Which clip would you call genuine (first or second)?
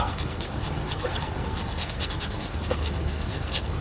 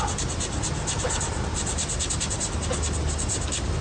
second